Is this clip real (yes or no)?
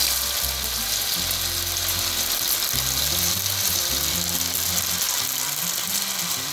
yes